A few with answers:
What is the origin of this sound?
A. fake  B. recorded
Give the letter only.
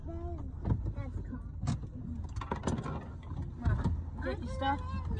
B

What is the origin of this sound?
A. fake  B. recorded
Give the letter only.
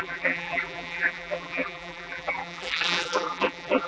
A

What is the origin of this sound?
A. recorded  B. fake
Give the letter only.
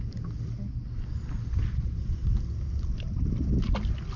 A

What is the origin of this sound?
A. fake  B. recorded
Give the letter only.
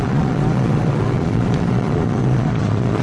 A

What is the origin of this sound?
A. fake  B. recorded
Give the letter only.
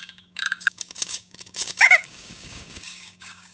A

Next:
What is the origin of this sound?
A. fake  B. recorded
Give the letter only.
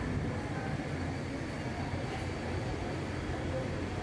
B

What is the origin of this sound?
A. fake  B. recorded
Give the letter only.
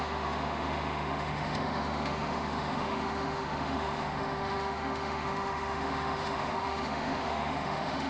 A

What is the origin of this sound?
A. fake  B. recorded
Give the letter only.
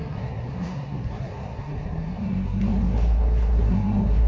A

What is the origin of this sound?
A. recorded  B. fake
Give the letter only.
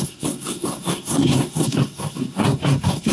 B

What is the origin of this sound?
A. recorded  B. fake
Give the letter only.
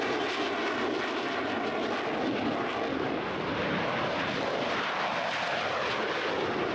A